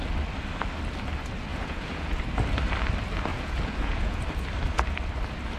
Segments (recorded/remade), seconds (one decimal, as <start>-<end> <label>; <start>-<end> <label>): 0.0-1.5 recorded; 1.5-2.2 remade; 2.2-3.3 recorded; 3.3-4.2 remade; 4.2-5.6 recorded